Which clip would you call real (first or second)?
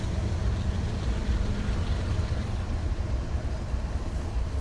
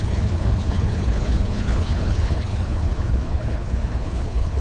first